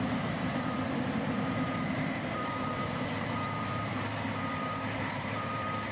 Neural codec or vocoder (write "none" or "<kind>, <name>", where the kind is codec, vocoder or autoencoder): vocoder, BigVGAN v2